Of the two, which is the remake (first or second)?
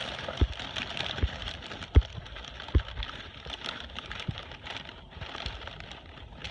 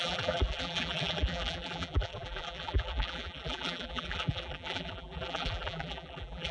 second